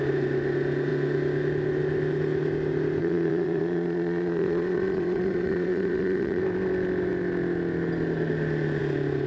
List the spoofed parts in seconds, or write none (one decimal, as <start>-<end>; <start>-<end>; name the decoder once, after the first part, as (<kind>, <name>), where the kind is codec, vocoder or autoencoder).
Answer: 3.0-6.4 (vocoder, Vocos)